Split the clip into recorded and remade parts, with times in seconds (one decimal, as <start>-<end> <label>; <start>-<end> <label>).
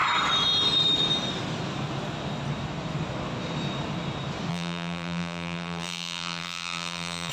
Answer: 0.0-4.5 recorded; 4.5-7.3 remade